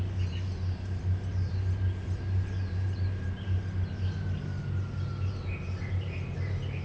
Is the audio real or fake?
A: real